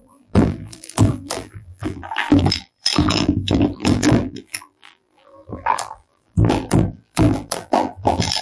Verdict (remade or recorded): remade